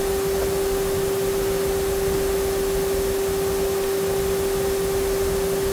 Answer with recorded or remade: recorded